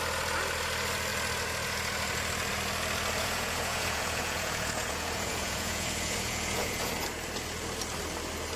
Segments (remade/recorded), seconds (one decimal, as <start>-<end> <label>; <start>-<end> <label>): 0.0-3.2 recorded; 3.2-6.9 remade; 6.9-8.6 recorded